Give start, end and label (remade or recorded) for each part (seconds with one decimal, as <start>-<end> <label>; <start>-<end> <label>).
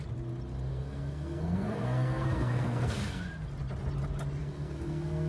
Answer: 0.0-0.7 recorded; 0.7-3.2 remade; 3.2-4.4 recorded; 4.4-5.3 remade